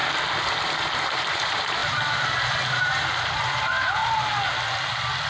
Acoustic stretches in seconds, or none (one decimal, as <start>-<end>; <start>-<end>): 0.0-1.2; 1.8-2.8; 4.0-5.3